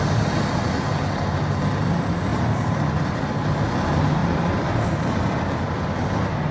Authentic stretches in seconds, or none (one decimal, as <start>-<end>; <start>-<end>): 0.0-2.3; 3.2-6.5